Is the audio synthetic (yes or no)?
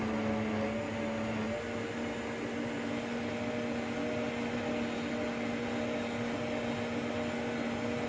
no